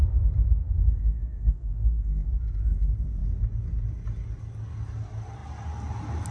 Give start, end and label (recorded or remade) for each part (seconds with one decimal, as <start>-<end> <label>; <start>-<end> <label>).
0.0-0.6 recorded; 0.6-2.3 remade; 2.3-6.3 recorded